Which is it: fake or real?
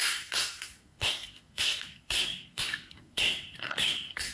fake